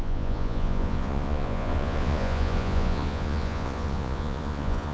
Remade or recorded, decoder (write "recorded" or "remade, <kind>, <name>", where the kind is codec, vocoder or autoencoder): remade, vocoder, Vocos